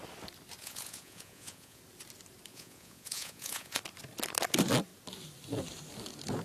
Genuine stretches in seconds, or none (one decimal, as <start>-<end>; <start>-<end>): 0.0-0.6; 1.8-2.5; 3.8-6.4